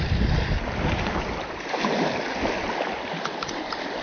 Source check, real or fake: real